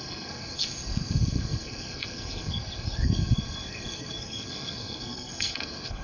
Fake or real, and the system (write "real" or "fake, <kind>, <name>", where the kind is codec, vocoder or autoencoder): fake, codec, SNAC